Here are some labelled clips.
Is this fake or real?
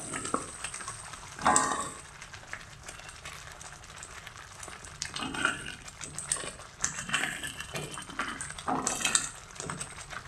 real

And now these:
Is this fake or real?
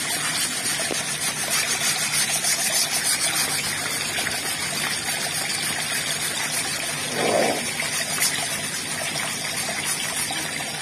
real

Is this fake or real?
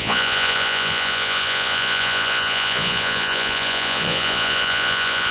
fake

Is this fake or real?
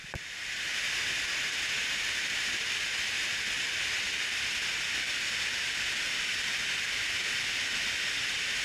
real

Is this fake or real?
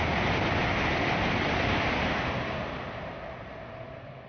real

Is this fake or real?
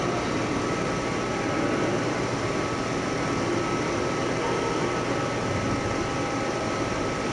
real